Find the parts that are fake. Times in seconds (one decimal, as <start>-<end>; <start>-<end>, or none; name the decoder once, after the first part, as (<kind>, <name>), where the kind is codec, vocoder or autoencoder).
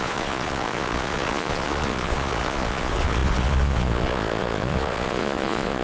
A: 0.0-5.8 (vocoder, Vocos)